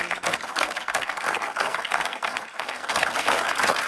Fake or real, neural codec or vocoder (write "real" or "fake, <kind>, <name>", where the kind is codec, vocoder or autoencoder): fake, codec, SNAC